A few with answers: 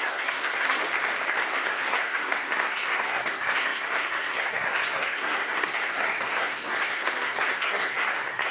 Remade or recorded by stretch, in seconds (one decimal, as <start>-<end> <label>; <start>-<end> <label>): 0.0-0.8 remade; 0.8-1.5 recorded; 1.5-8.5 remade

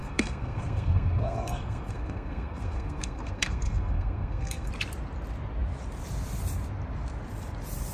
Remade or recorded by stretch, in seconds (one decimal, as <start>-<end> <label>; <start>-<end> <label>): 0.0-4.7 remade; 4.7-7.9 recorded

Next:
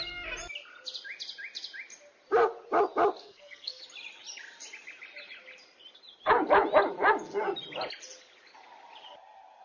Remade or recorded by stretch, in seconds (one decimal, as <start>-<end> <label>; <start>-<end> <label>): 0.0-3.2 recorded; 3.2-3.8 remade; 3.8-9.6 recorded